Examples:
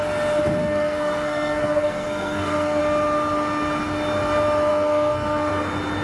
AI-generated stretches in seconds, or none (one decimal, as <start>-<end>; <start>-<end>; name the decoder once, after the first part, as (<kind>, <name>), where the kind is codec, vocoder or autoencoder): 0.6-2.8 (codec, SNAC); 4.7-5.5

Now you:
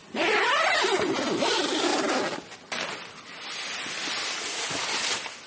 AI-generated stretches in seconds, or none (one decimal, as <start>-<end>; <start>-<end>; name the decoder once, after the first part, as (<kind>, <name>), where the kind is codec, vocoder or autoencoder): none

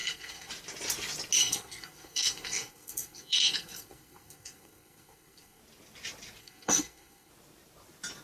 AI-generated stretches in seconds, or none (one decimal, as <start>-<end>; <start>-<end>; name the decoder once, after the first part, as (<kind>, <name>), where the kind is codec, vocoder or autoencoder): 0.0-0.5 (codec, SNAC); 1.4-5.6; 6.4-7.3